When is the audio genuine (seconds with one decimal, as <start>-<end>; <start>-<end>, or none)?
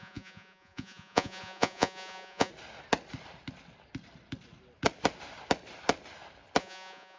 2.5-6.6